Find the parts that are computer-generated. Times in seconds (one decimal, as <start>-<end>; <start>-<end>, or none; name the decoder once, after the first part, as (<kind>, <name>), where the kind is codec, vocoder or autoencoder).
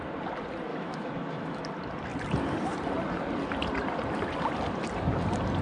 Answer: 0.7-1.6 (autoencoder, DAC-VAE)